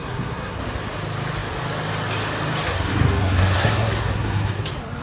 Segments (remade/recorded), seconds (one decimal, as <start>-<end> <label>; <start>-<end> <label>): 0.0-0.6 remade; 0.6-2.7 recorded; 2.7-4.6 remade; 4.6-5.0 recorded